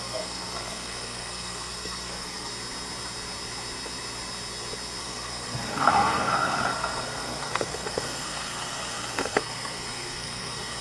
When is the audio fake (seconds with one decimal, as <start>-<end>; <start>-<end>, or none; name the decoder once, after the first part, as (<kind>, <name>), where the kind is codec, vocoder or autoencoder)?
0.0-2.5 (codec, SNAC); 5.0-10.8